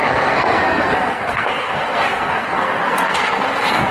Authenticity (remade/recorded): remade